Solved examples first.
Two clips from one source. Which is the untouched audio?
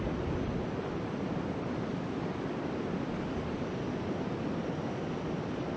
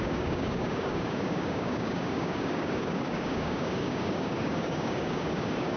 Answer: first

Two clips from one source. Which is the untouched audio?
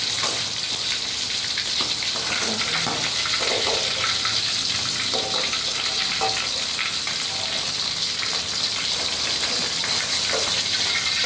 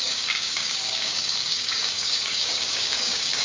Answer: first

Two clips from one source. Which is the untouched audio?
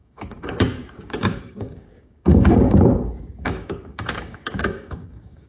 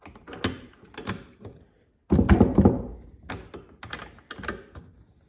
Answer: second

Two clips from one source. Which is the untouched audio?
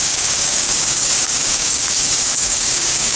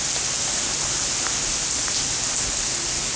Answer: second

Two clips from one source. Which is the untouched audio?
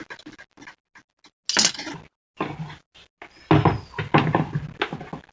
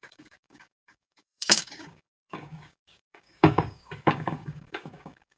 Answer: first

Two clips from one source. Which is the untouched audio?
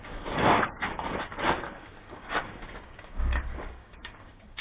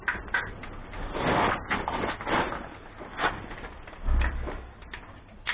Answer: second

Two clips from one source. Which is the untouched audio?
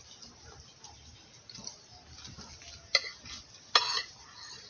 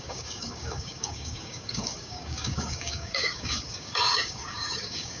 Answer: first